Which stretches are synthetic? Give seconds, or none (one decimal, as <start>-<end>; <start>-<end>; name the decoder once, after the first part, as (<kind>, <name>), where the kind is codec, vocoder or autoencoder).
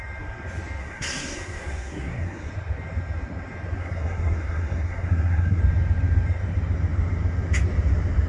0.8-2.5 (codec, SNAC); 3.8-5.6